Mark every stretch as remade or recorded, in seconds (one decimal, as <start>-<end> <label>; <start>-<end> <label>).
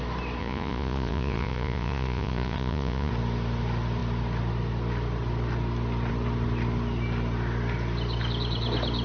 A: 0.0-0.4 recorded; 0.4-3.1 remade; 3.1-9.0 recorded